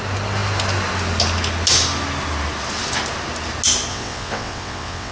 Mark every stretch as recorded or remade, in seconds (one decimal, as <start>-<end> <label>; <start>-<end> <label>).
0.0-3.9 recorded; 3.9-5.1 remade